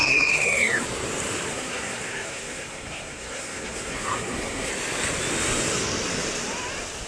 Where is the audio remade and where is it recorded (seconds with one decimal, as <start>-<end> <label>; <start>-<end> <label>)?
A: 0.0-0.8 remade; 0.8-1.5 recorded; 1.5-4.7 remade; 4.7-7.1 recorded